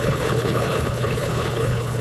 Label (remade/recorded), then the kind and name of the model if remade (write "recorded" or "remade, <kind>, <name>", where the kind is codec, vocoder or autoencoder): remade, codec, HILCodec